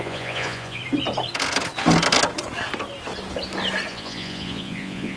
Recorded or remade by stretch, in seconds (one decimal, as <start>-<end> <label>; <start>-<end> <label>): 0.0-0.8 remade; 0.8-3.9 recorded; 3.9-5.2 remade